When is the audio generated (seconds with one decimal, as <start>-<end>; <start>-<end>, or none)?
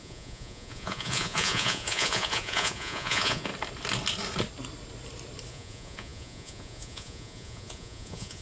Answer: 0.0-3.5; 5.5-8.4